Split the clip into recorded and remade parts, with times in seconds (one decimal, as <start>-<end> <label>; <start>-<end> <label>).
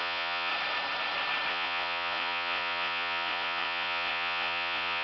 0.0-0.5 remade; 0.5-1.5 recorded; 1.5-5.0 remade